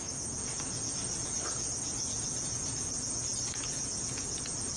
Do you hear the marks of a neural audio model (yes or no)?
yes